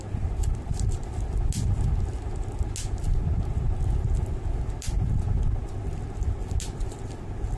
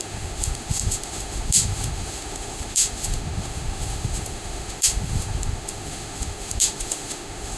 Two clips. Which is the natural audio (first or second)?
first